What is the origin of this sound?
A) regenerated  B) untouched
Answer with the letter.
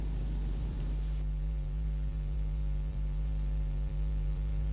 A